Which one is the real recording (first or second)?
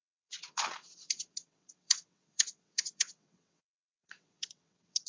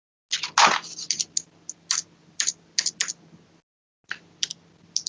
second